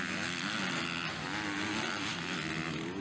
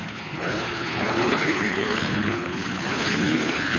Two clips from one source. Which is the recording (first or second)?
first